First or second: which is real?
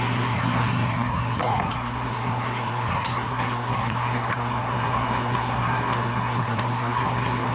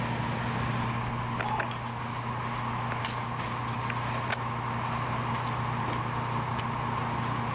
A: second